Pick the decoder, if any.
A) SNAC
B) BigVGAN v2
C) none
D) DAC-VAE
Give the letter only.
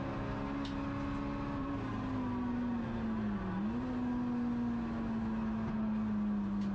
C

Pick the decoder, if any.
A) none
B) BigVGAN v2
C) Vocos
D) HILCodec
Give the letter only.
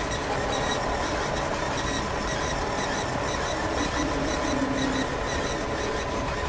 A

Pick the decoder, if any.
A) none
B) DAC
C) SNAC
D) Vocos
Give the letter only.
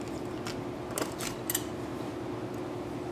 A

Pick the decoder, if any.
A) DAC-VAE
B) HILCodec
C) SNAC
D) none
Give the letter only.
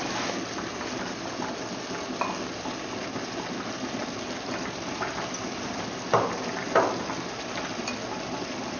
D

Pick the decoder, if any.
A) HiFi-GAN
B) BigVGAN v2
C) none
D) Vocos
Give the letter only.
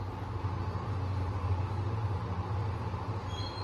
C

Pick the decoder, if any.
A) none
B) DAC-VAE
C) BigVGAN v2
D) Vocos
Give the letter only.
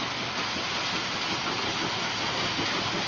A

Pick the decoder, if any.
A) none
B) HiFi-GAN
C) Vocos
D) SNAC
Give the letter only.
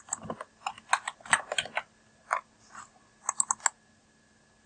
A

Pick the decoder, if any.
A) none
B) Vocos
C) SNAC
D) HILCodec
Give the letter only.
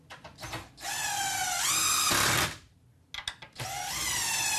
A